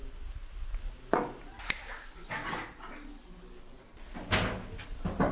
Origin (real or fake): real